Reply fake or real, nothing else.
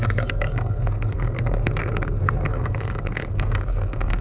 fake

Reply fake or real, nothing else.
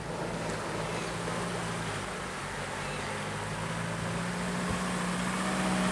real